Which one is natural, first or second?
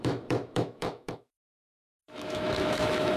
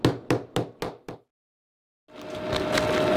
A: second